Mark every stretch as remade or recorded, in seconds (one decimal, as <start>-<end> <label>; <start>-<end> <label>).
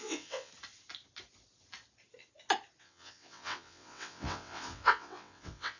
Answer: 0.0-0.5 remade; 0.5-2.8 recorded; 2.8-5.8 remade